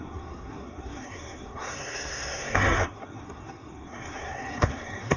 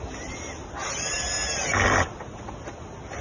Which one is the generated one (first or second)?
first